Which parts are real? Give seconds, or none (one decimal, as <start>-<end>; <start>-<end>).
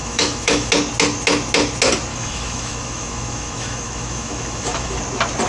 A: 0.7-2.1; 5.0-5.5